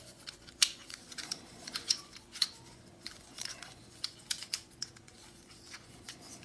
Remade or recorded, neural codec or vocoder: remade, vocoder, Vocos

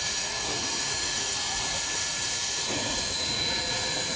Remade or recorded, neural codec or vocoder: remade, vocoder, Vocos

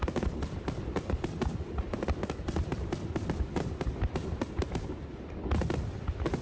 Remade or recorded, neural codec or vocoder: recorded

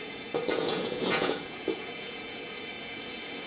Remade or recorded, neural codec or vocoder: remade, vocoder, Vocos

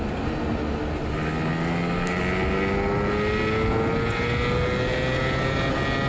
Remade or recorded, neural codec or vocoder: recorded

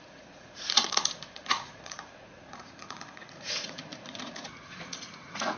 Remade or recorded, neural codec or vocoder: remade, vocoder, Vocos